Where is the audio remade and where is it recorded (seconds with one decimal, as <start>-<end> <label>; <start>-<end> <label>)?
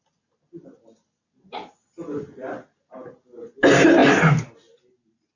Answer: 0.0-5.4 recorded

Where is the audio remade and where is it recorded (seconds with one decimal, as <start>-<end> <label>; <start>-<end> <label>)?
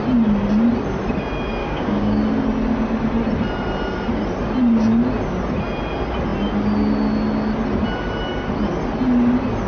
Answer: 0.0-1.6 recorded; 1.6-2.2 remade; 2.2-9.7 recorded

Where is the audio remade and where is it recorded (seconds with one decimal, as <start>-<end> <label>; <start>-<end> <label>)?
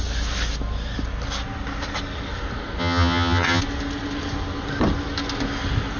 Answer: 0.0-2.8 recorded; 2.8-3.6 remade; 3.6-6.0 recorded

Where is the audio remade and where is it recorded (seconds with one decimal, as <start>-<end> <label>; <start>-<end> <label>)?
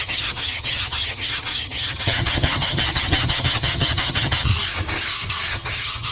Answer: 0.0-4.5 remade; 4.5-5.5 recorded; 5.5-6.1 remade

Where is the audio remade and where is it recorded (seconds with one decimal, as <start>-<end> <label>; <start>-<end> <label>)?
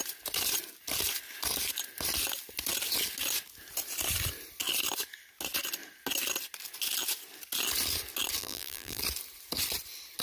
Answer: 0.0-8.4 recorded; 8.4-9.0 remade; 9.0-10.2 recorded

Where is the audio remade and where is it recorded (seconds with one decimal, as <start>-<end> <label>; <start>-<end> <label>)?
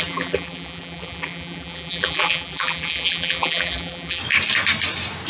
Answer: 0.0-4.2 remade; 4.2-5.3 recorded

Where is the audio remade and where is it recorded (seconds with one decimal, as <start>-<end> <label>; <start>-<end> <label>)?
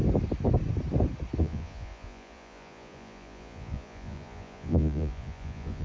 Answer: 0.0-1.4 recorded; 1.4-5.8 remade